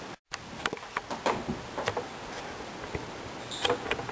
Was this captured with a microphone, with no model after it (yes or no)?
yes